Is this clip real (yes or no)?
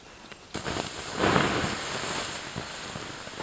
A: yes